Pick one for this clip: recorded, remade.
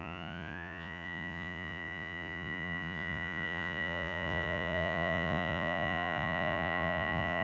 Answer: remade